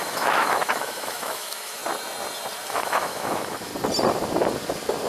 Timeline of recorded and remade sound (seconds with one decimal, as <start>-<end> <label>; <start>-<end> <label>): 0.0-1.8 remade; 1.8-2.7 recorded; 2.7-3.7 remade; 3.7-5.1 recorded